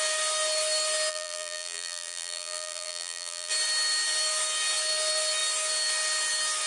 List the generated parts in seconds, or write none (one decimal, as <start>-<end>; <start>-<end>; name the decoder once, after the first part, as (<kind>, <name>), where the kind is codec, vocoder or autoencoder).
1.1-3.5 (vocoder, BigVGAN v2)

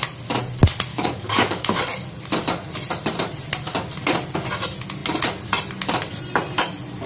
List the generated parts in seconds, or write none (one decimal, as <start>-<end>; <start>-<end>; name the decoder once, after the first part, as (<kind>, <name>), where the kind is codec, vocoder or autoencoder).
0.9-1.8 (codec, DAC)

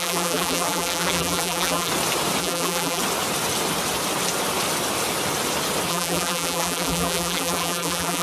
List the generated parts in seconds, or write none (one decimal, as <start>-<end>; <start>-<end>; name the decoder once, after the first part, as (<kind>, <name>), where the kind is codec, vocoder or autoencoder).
0.0-1.9 (vocoder, BigVGAN v2); 2.4-3.0; 5.9-8.2

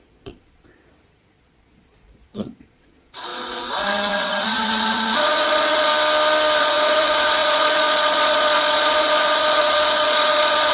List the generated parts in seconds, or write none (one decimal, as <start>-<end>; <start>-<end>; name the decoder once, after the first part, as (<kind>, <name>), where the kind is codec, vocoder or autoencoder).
0.0-5.9 (vocoder, Vocos); 6.6-10.7

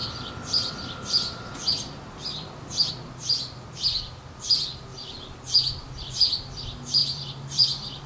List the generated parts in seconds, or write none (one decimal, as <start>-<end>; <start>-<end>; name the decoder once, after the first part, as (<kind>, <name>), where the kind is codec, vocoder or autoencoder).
0.0-2.9 (vocoder, BigVGAN v2); 7.0-8.1

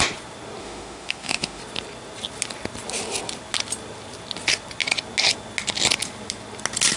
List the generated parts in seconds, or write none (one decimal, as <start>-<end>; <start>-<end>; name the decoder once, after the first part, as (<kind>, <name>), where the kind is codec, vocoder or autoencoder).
0.6-1.6 (autoencoder, DAC-VAE)

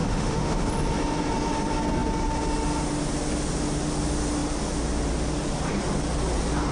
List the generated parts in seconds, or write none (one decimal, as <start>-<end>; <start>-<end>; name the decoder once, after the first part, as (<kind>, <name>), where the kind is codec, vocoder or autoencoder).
0.0-0.7 (autoencoder, DAC-VAE)